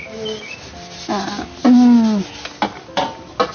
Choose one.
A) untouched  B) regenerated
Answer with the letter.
A